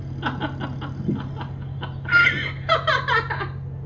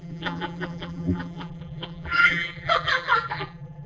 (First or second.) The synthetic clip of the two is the second